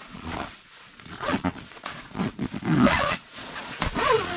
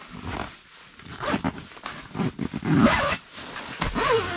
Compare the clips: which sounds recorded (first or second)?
second